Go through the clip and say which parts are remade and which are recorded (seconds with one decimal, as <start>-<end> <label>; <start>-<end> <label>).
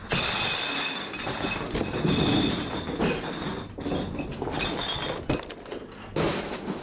0.0-6.8 recorded